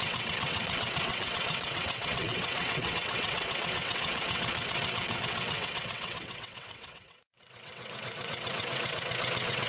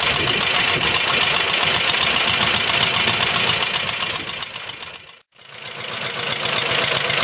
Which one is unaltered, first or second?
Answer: second